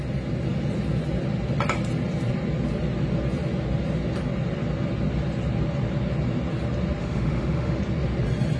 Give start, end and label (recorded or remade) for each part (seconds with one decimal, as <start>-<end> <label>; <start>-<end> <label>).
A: 0.0-7.0 recorded; 7.0-7.8 remade; 7.8-8.6 recorded